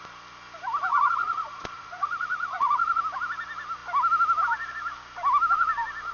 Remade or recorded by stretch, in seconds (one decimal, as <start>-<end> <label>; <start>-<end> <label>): 0.0-0.9 recorded; 0.9-3.0 remade; 3.0-6.1 recorded